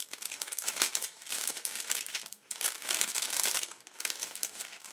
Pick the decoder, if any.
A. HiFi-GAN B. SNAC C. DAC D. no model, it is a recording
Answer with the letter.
C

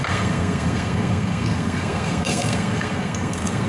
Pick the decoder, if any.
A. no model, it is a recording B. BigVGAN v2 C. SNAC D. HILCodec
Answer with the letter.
C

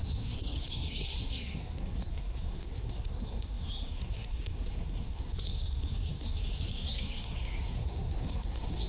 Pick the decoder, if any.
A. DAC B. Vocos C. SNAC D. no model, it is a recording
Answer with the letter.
C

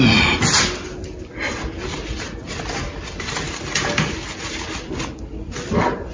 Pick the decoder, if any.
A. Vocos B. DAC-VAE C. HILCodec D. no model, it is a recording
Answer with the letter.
D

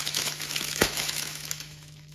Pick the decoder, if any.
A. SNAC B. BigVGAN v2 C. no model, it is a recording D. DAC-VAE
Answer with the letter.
D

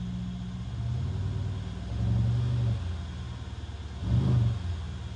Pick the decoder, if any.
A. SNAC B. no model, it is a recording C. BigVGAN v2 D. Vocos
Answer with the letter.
B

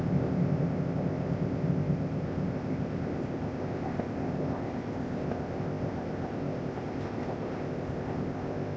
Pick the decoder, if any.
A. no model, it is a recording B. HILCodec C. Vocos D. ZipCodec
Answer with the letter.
D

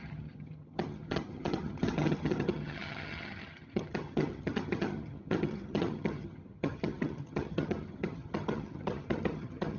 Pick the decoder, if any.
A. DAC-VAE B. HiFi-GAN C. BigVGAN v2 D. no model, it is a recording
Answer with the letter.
B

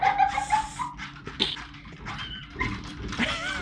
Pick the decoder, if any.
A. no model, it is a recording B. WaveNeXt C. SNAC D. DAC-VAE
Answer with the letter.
A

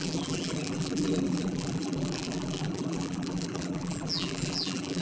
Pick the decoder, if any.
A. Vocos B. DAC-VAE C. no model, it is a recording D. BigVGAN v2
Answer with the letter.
D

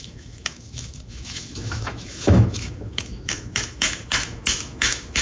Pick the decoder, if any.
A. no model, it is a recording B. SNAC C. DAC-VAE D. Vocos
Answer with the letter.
C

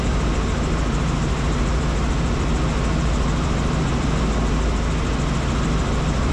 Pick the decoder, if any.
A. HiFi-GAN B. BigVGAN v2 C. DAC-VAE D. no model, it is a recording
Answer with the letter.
D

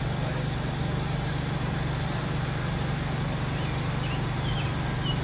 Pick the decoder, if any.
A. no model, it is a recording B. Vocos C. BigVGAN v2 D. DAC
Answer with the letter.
A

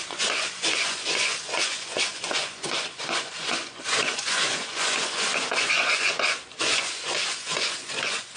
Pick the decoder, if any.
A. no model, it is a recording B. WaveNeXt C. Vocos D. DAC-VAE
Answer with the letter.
C